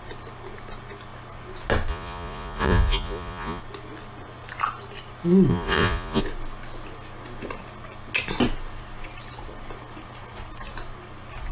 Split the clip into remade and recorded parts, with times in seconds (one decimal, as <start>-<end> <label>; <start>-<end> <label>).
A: 0.0-1.9 recorded; 1.9-3.6 remade; 3.6-5.5 recorded; 5.5-6.2 remade; 6.2-11.5 recorded